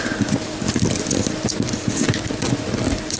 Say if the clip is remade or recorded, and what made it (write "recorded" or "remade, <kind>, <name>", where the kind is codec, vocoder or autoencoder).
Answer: remade, vocoder, BigVGAN v2